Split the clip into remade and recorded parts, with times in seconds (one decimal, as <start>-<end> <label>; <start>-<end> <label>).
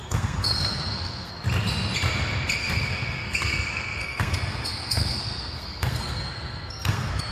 0.0-1.3 remade; 1.3-2.6 recorded; 2.6-7.3 remade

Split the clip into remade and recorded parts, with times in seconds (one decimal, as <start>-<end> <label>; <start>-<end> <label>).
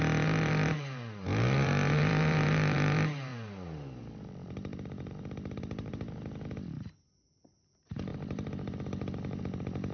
0.0-9.9 remade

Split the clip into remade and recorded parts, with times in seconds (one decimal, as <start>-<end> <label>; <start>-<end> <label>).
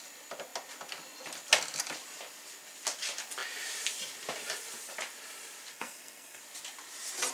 0.0-5.7 recorded; 5.7-6.4 remade; 6.4-7.3 recorded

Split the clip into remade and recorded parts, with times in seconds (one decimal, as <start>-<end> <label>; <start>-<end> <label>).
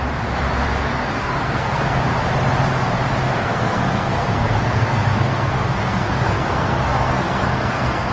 0.0-1.1 recorded; 1.1-2.0 remade; 2.0-3.3 recorded; 3.3-8.1 remade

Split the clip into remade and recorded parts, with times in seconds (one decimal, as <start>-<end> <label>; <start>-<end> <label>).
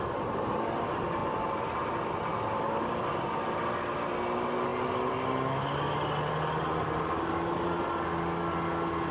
0.0-9.1 recorded